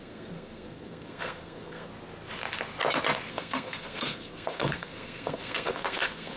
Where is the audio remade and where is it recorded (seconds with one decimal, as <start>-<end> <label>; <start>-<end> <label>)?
0.0-1.9 remade; 1.9-3.3 recorded; 3.3-6.4 remade